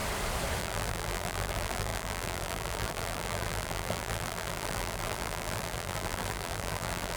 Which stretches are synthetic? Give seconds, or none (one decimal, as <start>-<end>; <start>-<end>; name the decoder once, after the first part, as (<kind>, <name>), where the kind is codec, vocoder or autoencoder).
0.6-7.2 (vocoder, BigVGAN v2)